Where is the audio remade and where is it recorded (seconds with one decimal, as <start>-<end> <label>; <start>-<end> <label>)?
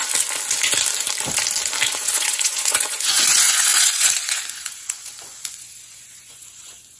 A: 0.0-1.9 recorded; 1.9-7.0 remade